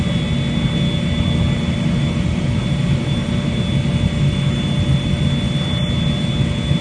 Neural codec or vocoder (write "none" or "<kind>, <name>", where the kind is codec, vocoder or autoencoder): none